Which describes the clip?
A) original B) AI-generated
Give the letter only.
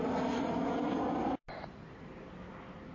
A